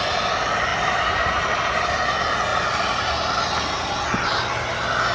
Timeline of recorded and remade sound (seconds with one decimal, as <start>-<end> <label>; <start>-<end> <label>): 0.0-5.1 recorded